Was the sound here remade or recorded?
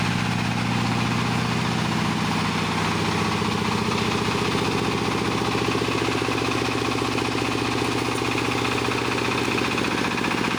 recorded